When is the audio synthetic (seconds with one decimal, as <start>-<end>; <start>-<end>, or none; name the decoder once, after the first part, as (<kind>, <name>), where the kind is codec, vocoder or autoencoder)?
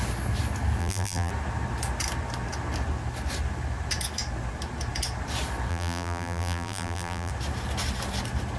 0.8-1.3 (vocoder, BigVGAN v2); 5.7-7.3